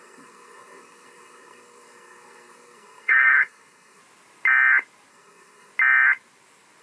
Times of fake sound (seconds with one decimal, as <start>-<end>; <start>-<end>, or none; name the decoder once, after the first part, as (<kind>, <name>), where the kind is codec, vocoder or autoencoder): 0.0-4.0 (codec, SNAC); 5.1-5.7